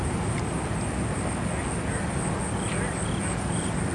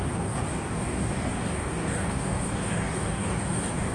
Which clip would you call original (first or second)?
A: first